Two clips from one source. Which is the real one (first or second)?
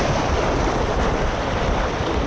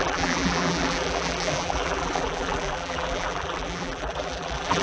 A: first